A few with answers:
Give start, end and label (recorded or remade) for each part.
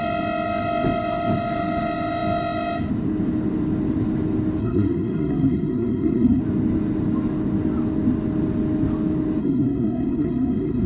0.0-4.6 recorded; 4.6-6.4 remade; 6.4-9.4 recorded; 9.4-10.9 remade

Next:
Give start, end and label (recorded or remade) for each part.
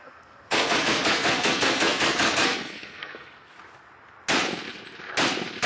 0.0-3.5 remade; 3.5-5.7 recorded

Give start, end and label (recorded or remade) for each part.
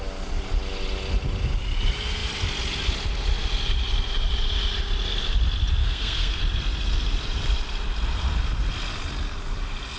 0.0-5.8 recorded; 5.8-6.4 remade; 6.4-10.0 recorded